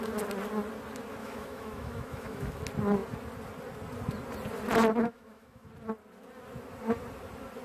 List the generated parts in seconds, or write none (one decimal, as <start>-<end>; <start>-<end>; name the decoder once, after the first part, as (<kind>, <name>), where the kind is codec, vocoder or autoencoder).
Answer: 1.2-2.6 (autoencoder, DAC-VAE); 5.0-5.7